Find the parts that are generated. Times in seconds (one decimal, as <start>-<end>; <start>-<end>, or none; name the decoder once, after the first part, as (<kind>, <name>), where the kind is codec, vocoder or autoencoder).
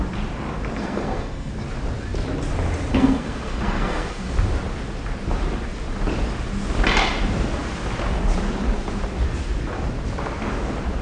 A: 0.8-1.5 (codec, SNAC); 2.9-4.3